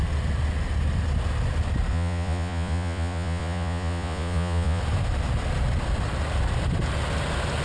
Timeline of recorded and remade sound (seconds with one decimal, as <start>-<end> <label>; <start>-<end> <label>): 0.0-1.9 recorded; 1.9-4.8 remade; 4.8-7.6 recorded